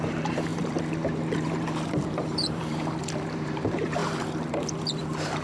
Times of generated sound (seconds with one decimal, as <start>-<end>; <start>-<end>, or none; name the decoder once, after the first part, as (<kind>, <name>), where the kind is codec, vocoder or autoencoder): 0.0-5.4 (vocoder, BigVGAN v2)